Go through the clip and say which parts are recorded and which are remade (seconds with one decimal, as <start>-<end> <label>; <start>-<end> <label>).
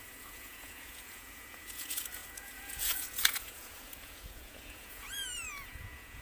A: 0.0-6.2 remade